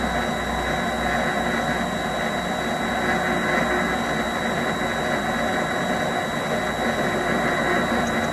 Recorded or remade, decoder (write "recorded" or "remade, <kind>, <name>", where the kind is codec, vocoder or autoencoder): recorded